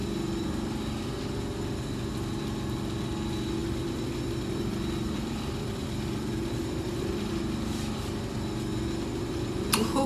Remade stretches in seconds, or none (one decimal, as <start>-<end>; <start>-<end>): 3.6-7.3